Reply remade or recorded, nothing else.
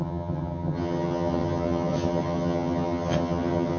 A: remade